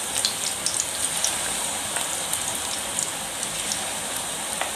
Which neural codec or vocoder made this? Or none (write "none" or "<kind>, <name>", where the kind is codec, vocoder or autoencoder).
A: none